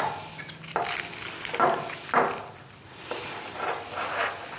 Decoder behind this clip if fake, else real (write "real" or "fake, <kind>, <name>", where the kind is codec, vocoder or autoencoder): real